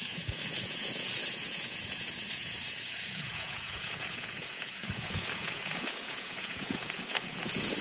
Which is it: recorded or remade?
remade